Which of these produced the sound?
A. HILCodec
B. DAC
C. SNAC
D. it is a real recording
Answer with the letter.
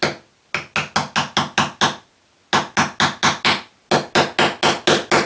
D